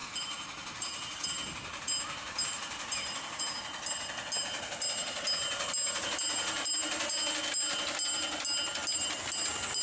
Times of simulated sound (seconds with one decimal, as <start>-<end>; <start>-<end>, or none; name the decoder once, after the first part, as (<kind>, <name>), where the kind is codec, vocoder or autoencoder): 0.0-3.4 (vocoder, BigVGAN v2)